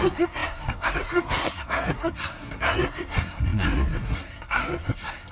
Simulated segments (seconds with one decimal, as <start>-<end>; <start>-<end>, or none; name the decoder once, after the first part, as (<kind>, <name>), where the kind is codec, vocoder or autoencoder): 0.0-5.3 (codec, SNAC)